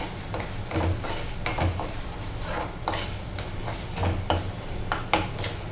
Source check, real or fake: real